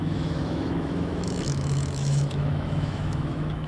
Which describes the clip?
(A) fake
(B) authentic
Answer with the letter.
A